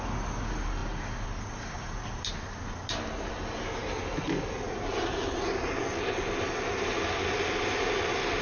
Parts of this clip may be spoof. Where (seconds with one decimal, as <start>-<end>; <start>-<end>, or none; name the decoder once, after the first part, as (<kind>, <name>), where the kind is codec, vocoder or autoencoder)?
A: none